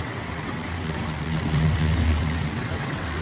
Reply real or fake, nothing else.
fake